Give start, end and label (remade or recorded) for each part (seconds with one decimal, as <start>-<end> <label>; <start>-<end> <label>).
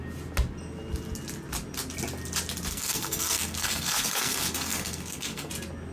0.0-2.7 recorded; 2.7-5.5 remade; 5.5-5.9 recorded